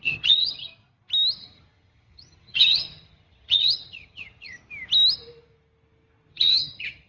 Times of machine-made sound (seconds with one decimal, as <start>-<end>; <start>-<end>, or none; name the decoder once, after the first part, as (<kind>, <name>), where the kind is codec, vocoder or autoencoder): 0.0-0.7 (vocoder, HiFi-GAN); 1.4-4.6; 6.3-7.1